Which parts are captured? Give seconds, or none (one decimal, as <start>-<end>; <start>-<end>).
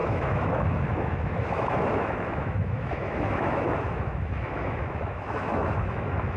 none